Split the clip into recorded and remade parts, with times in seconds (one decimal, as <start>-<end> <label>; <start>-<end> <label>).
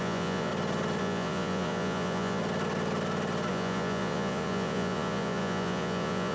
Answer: 0.0-0.5 remade; 0.5-1.0 recorded; 1.0-2.4 remade; 2.4-3.5 recorded; 3.5-6.3 remade